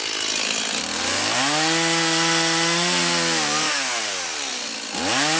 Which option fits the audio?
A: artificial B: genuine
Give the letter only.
B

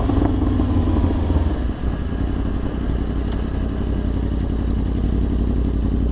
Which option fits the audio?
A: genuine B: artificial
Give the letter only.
A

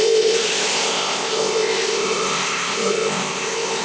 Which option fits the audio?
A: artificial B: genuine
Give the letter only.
A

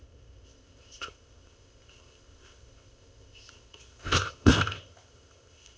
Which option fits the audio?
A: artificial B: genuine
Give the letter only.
A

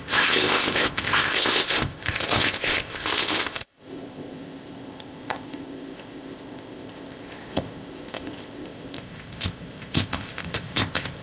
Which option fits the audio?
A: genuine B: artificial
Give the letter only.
B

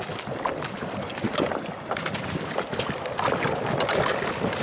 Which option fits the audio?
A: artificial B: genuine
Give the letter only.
B